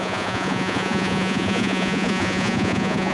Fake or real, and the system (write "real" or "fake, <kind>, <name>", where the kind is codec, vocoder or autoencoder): fake, vocoder, Vocos